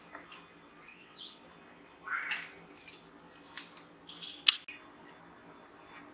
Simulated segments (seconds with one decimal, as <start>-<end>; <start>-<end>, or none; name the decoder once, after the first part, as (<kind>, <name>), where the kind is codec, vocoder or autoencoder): 0.9-1.4 (vocoder, WaveNeXt)